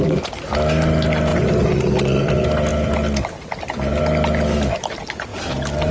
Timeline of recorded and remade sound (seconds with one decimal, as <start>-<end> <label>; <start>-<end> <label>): 0.0-5.9 recorded